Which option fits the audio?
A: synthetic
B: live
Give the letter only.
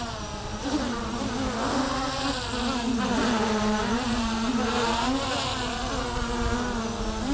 B